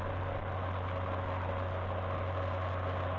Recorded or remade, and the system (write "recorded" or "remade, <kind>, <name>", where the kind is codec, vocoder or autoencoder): recorded